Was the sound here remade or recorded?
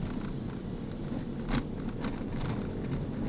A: recorded